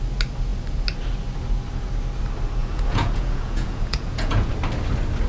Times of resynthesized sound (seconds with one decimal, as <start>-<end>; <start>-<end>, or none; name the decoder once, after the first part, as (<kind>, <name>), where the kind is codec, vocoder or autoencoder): 2.6-4.5 (vocoder, Vocos)